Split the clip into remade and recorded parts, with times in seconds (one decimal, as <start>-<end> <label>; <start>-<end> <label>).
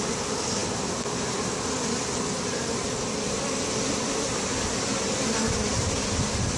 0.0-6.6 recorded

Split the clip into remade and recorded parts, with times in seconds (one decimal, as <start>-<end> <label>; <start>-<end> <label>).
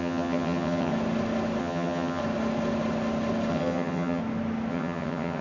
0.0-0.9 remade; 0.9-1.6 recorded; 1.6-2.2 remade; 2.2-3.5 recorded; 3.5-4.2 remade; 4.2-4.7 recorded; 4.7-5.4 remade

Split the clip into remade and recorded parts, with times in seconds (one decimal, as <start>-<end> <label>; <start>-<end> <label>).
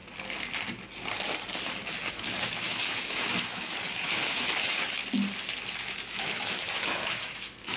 0.0-2.1 recorded; 2.1-5.0 remade; 5.0-5.8 recorded; 5.8-7.8 remade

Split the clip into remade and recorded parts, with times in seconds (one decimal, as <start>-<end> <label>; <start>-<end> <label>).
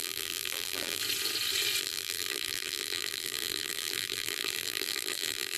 0.0-1.0 remade; 1.0-1.8 recorded; 1.8-5.6 remade